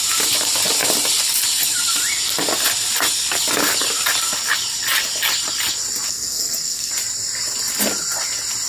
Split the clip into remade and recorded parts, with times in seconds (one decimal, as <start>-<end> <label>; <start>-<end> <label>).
0.0-6.1 recorded; 6.1-6.9 remade; 6.9-8.7 recorded